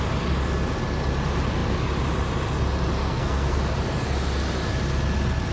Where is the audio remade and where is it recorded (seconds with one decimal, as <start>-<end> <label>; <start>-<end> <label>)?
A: 0.0-3.0 recorded; 3.0-3.6 remade; 3.6-5.5 recorded